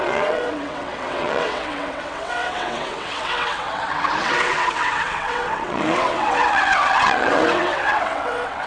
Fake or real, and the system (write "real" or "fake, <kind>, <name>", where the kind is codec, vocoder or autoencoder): fake, vocoder, WaveNeXt